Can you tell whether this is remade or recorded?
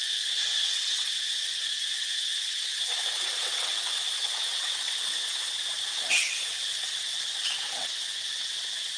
remade